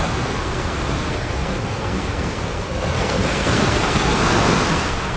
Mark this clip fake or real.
fake